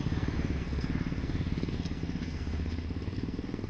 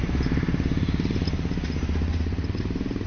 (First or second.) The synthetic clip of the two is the first